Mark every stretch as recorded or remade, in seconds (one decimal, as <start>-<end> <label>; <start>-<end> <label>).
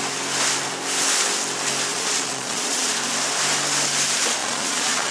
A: 0.0-1.9 recorded; 1.9-2.9 remade; 2.9-4.4 recorded; 4.4-5.1 remade